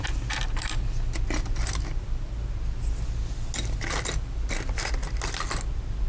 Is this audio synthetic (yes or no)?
no